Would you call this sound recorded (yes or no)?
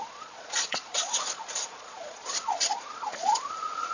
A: no